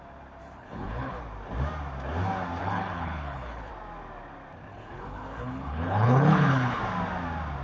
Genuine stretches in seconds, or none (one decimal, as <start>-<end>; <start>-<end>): 0.0-0.4; 1.2-2.6; 3.7-4.7; 6.8-7.6